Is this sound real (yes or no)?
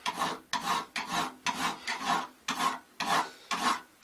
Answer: no